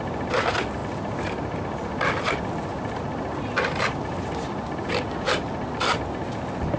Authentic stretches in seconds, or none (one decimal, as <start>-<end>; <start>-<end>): 0.0-6.8